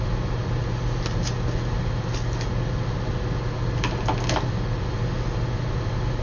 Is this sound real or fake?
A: real